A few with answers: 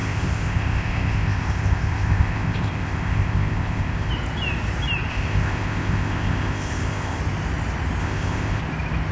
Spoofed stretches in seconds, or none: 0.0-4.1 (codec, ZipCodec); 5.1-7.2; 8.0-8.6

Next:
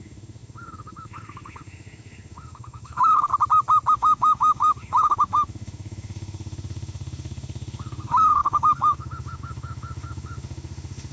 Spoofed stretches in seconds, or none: 0.0-3.3 (autoencoder, DAC-VAE); 3.9-11.1

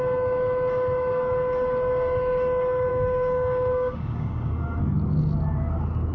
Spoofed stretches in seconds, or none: 2.9-4.5 (codec, DAC)